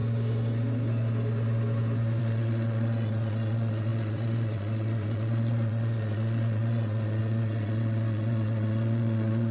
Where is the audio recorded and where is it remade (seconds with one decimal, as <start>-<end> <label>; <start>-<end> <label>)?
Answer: 0.0-2.2 recorded; 2.2-9.5 remade